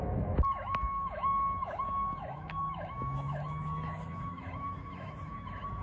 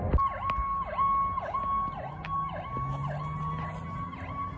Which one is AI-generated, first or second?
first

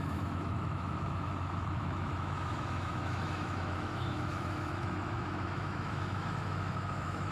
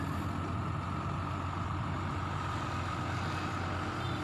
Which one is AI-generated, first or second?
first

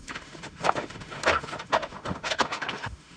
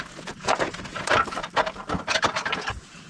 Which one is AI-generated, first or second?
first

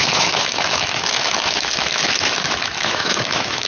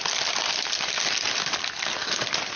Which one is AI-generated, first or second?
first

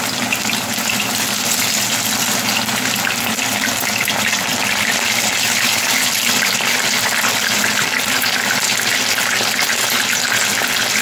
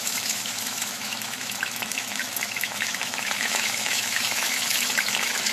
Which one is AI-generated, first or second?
second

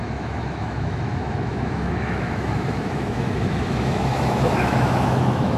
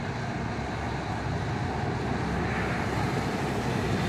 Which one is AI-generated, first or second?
first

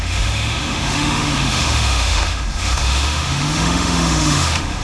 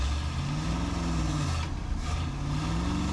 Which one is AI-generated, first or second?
first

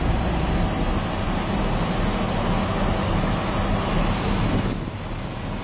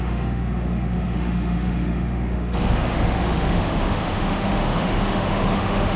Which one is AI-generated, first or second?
second